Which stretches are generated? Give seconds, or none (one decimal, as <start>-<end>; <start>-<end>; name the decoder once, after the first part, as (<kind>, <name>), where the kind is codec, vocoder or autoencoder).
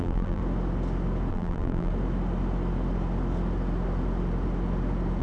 0.0-0.4 (vocoder, BigVGAN v2); 1.3-1.9